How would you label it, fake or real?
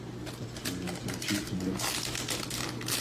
real